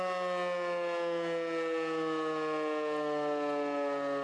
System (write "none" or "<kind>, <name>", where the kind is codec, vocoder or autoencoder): none